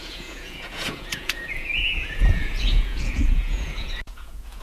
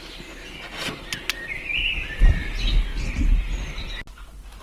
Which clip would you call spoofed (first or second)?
first